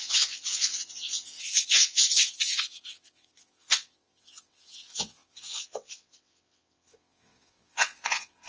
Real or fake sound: fake